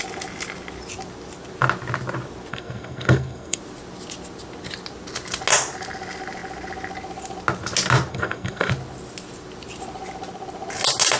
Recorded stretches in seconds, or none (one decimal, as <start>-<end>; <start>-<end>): 0.0-2.5; 3.6-8.1; 8.7-11.2